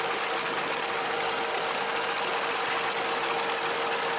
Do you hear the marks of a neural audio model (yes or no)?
no